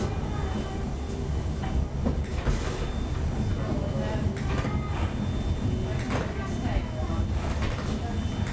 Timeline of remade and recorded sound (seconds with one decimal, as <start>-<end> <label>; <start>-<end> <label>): 0.0-8.5 recorded